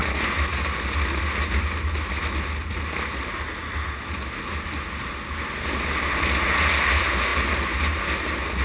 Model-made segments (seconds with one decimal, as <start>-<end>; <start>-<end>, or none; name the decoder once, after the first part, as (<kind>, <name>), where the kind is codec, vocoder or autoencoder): none